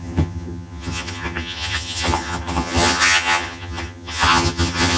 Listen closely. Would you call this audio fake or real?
fake